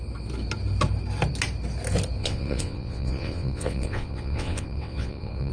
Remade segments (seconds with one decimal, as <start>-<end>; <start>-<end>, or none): 2.2-5.5